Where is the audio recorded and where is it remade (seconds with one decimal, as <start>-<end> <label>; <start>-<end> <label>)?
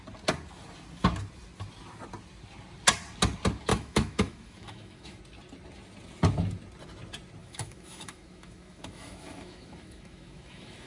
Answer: 0.0-3.7 recorded; 3.7-5.2 remade; 5.2-7.4 recorded; 7.4-10.9 remade